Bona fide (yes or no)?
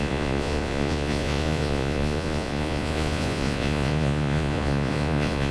no